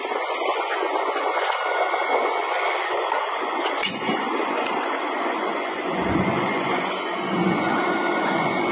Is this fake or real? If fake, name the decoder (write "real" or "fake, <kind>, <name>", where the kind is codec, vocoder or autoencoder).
fake, vocoder, Vocos